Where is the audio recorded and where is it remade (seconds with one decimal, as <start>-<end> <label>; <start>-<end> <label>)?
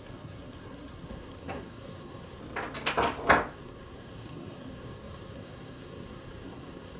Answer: 0.0-2.4 remade; 2.4-3.5 recorded; 3.5-7.0 remade